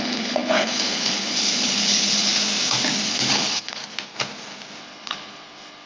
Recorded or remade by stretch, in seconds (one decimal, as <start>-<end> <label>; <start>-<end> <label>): 0.0-2.3 remade; 2.3-3.1 recorded; 3.1-3.8 remade; 3.8-4.8 recorded; 4.8-5.9 remade